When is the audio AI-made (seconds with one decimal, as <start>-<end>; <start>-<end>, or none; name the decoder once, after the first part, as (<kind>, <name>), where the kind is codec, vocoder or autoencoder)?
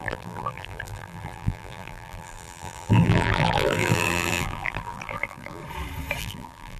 0.0-5.6 (vocoder, BigVGAN v2); 6.2-6.8